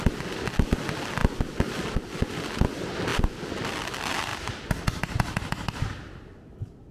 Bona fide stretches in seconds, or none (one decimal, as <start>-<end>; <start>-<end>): 0.0-6.9